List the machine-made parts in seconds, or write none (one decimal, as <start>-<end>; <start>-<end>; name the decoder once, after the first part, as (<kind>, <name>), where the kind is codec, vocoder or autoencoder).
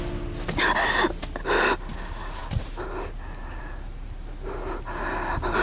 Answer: none